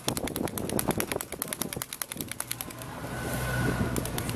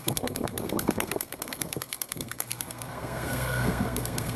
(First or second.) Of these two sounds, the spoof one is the second